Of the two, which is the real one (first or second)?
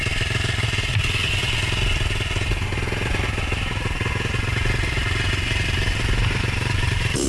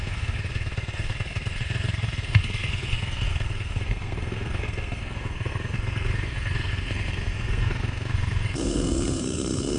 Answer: first